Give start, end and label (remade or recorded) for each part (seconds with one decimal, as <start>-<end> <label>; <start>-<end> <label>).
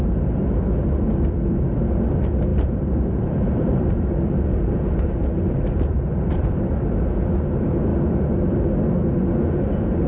0.0-2.5 recorded; 2.5-6.5 remade; 6.5-10.1 recorded